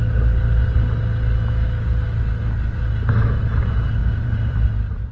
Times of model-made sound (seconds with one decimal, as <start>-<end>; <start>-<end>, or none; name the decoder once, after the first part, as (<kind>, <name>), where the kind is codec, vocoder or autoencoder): 4.0-5.1 (vocoder, BigVGAN v2)